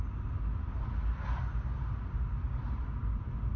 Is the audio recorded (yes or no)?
yes